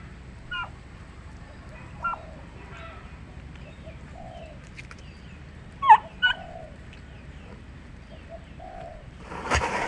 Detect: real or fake fake